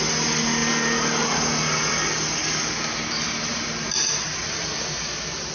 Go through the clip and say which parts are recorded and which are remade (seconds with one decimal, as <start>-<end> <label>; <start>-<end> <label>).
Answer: 0.0-5.5 remade